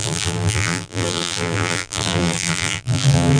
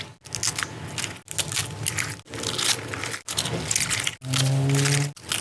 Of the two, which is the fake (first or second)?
first